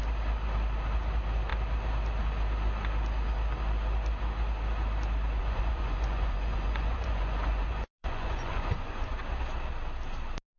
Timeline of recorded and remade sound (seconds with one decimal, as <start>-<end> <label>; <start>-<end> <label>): 0.0-5.4 recorded; 5.4-9.2 remade; 9.2-10.6 recorded